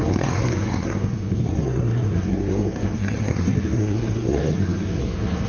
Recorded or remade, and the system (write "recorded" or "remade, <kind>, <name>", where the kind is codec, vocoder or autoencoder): remade, codec, SNAC